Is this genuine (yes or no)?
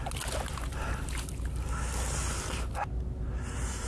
yes